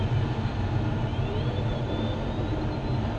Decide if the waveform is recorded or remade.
recorded